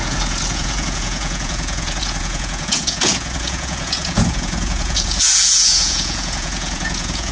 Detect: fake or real fake